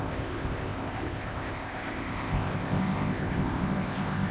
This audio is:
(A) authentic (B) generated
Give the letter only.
B